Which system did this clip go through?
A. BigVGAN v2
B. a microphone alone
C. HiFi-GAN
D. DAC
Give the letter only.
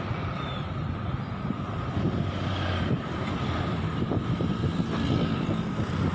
B